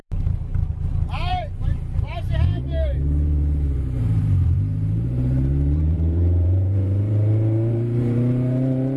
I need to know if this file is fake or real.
fake